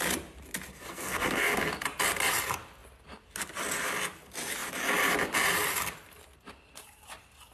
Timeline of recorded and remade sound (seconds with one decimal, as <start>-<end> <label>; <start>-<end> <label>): 0.0-0.7 recorded; 0.7-1.6 remade; 1.6-7.5 recorded